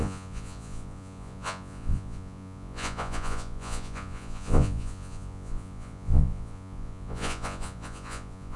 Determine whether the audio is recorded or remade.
remade